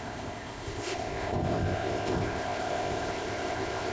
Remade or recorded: remade